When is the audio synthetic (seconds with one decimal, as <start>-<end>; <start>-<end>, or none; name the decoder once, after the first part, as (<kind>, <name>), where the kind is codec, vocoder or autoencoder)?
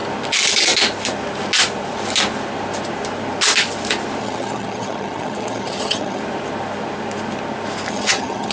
4.2-6.2 (vocoder, HiFi-GAN); 7.9-8.5